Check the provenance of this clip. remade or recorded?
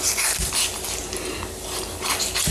recorded